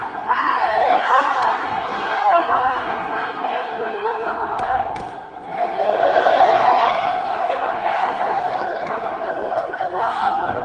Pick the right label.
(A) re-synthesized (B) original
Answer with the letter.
A